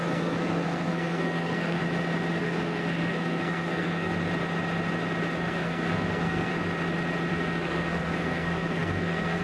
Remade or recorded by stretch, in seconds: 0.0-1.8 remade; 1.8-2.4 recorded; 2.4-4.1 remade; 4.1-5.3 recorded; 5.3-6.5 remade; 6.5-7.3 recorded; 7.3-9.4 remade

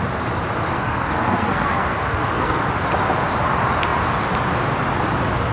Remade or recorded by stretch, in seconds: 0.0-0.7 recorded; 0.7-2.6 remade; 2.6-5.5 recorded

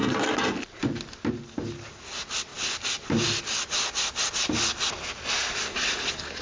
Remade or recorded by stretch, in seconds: 0.0-6.4 recorded

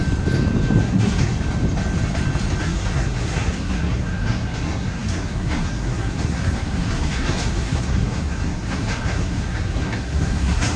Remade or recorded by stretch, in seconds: 0.0-0.8 recorded; 0.8-1.3 remade; 1.3-2.6 recorded; 2.6-10.8 remade

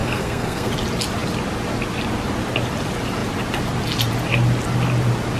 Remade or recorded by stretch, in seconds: 0.0-0.7 remade; 0.7-5.4 recorded